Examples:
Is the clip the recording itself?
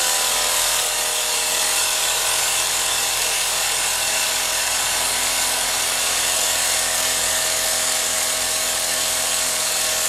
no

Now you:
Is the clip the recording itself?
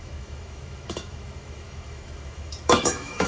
no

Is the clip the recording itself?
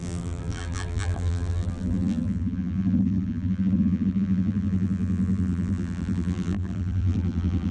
no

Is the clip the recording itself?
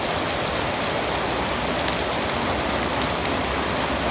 yes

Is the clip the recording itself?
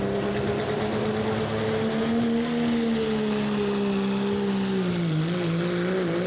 yes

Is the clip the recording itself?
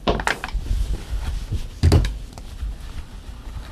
yes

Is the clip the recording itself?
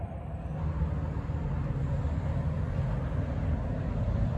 yes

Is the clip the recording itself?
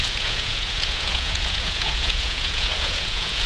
no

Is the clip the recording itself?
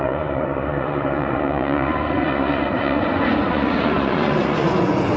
no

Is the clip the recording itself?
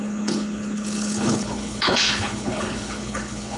no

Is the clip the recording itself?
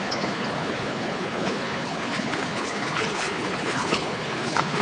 no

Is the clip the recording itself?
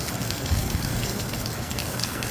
no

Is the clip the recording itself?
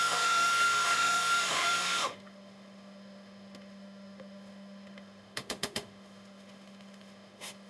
no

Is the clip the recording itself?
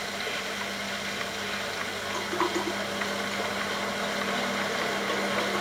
yes